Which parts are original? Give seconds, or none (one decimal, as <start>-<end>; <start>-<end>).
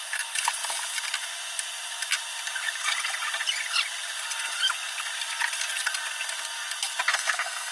0.0-7.1